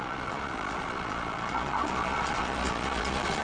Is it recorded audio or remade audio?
remade